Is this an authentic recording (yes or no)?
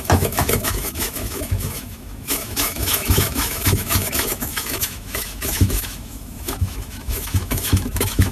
no